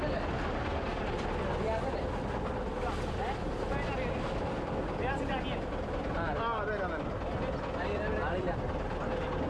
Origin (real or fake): real